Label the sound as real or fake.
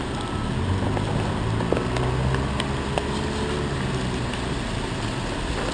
real